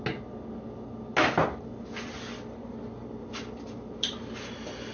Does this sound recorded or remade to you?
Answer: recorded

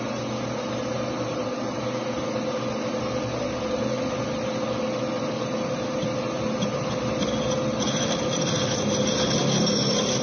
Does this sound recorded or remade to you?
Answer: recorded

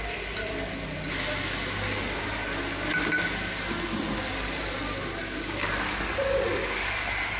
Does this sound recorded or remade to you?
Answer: recorded